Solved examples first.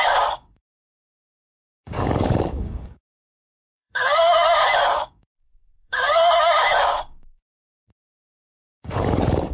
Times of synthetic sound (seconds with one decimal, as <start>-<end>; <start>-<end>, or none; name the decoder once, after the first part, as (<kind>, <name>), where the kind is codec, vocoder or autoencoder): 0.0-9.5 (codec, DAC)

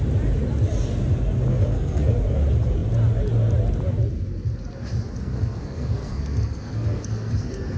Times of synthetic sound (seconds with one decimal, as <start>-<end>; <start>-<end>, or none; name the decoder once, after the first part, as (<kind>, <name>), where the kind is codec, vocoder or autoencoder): 1.5-2.1 (codec, SNAC); 5.2-7.8

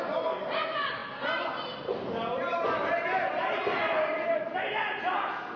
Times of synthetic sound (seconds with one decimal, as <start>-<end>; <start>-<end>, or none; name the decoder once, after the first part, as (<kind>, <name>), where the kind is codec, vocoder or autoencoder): none

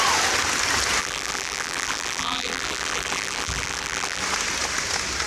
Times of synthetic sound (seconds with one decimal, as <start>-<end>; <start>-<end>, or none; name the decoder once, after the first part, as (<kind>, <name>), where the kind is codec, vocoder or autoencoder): 1.0-4.2 (vocoder, BigVGAN v2)